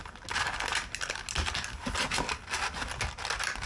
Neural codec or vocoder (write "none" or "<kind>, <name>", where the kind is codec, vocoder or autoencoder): none